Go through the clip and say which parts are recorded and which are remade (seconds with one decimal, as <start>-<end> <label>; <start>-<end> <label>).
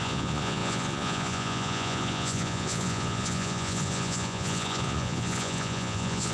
0.0-6.3 remade